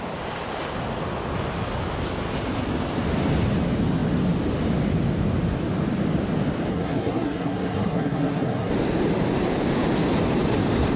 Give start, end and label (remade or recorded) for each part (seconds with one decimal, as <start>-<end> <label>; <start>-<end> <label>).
0.0-6.7 recorded; 6.7-8.7 remade; 8.7-11.0 recorded